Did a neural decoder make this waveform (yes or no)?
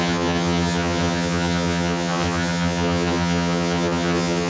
yes